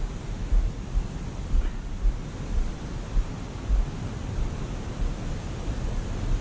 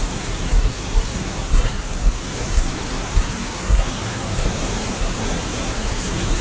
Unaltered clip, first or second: first